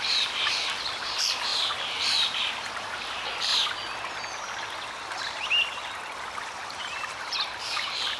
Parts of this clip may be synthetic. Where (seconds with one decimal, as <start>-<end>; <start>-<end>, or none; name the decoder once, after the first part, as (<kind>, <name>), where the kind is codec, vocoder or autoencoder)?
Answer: 0.0-3.5 (vocoder, BigVGAN v2); 6.4-8.2